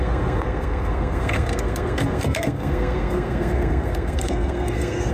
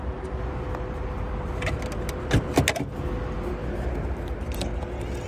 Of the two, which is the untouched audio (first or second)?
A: second